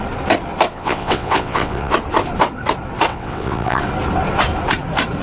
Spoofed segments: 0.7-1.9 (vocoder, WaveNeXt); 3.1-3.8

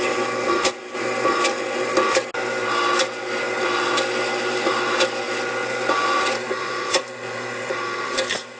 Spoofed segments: 5.6-7.4 (vocoder, Vocos)

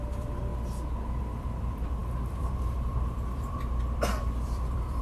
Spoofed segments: 0.0-0.5 (vocoder, BigVGAN v2); 1.2-5.0

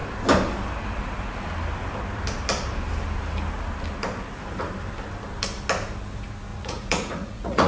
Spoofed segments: 6.5-7.7 (vocoder, Vocos)

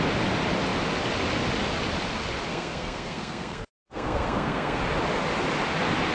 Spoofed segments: 2.5-4.8 (codec, SNAC)